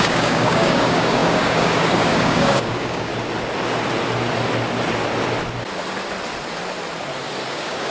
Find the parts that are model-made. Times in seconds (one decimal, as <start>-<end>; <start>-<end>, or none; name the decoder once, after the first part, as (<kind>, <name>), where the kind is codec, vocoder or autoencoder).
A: 0.0-3.1 (codec, DAC); 7.5-7.9